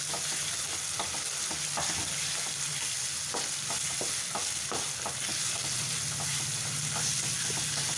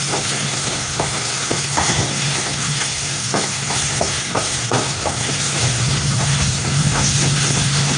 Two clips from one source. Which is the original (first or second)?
first